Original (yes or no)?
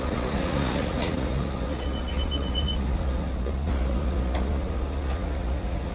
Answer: no